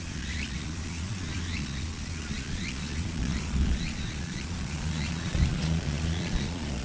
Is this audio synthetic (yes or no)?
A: yes